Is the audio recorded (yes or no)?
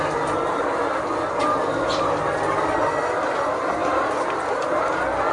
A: yes